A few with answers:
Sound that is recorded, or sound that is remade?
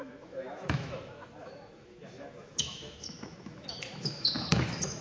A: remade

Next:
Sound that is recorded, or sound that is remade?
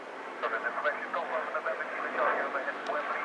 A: recorded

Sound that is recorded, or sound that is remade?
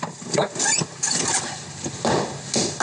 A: recorded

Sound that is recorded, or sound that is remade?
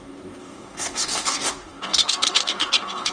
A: remade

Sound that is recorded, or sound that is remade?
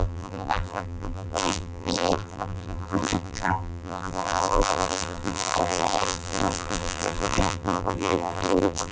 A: remade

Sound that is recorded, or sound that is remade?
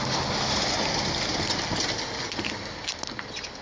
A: recorded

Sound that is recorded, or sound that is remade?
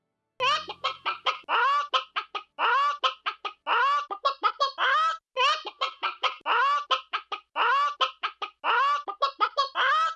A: recorded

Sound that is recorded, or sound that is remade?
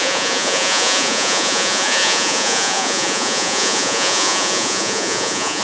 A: remade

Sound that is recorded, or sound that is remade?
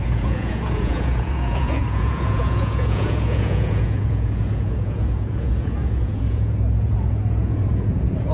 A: remade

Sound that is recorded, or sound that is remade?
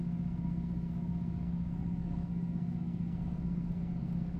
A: remade